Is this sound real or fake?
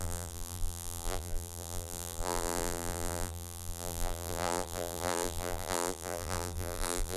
fake